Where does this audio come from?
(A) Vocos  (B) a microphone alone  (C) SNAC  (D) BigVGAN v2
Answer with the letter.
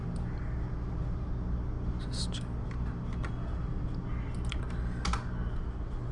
B